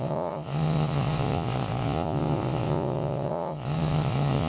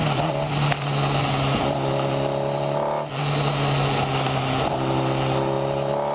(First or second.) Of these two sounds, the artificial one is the first